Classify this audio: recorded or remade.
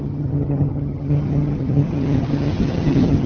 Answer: remade